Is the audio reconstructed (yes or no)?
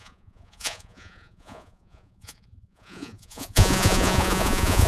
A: yes